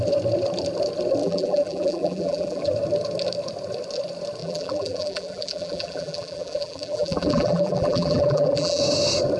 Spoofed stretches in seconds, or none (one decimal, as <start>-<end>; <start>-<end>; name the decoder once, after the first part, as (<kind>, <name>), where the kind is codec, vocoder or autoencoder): 1.2-2.6 (vocoder, BigVGAN v2); 4.4-8.8